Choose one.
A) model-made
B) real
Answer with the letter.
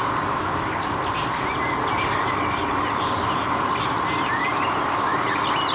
B